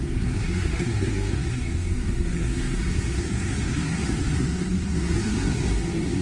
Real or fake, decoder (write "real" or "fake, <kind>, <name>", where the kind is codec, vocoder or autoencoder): fake, codec, SNAC